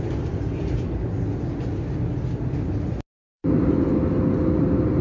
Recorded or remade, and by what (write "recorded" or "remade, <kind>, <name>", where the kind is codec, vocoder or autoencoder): recorded